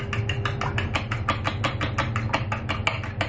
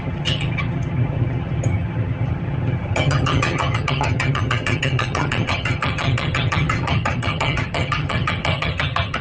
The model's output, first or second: second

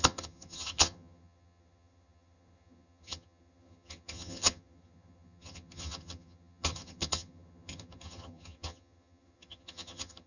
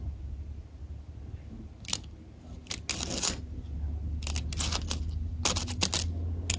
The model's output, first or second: first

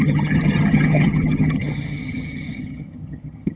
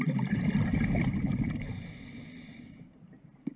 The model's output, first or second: first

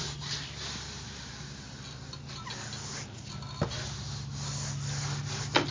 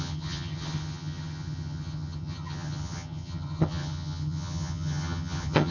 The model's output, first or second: second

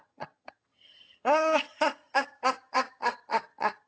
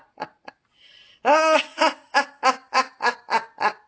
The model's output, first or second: first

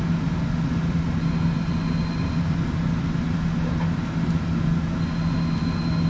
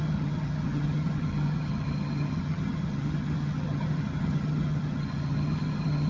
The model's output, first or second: second